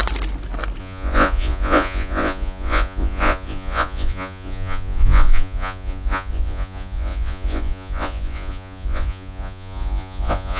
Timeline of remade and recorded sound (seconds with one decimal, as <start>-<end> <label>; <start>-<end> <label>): 0.0-0.8 recorded; 0.8-10.6 remade